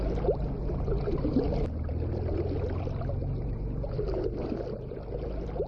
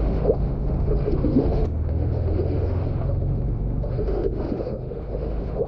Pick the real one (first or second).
first